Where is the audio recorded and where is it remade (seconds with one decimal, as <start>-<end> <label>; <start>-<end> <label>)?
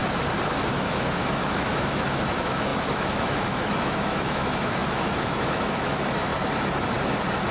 0.0-0.7 recorded; 0.7-6.3 remade; 6.3-7.5 recorded